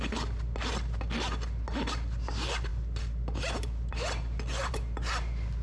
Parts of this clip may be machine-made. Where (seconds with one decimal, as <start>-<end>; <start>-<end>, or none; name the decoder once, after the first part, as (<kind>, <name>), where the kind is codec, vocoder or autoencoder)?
none